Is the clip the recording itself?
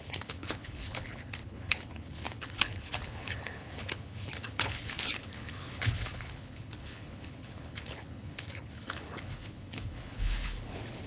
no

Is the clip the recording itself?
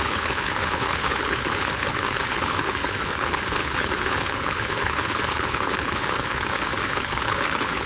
no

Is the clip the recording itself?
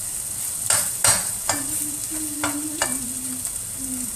yes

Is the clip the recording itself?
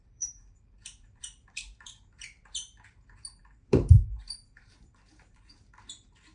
no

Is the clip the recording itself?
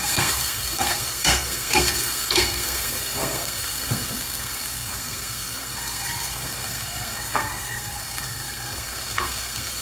no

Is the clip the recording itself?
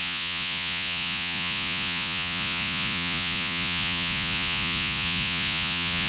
no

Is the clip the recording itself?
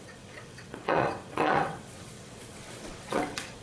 no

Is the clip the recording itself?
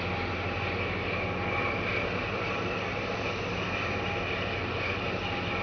yes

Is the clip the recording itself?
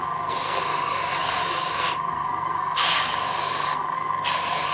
no